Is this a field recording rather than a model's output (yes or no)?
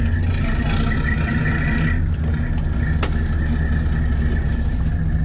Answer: yes